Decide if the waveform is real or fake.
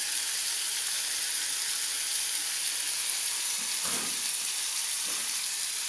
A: real